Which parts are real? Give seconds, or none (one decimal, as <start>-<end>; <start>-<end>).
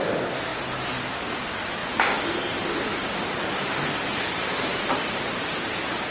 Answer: 0.0-1.8; 3.8-4.7